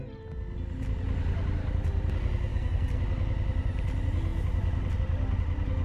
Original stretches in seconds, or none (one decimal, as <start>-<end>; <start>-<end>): 0.0-2.5; 3.0-5.8